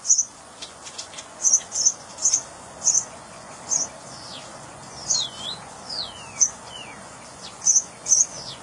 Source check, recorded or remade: remade